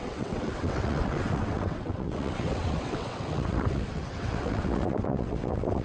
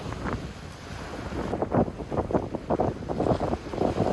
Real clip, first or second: second